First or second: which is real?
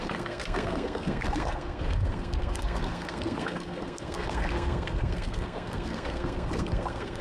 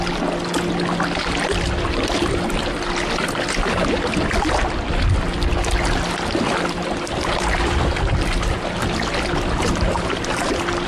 second